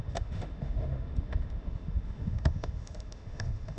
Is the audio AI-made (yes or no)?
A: yes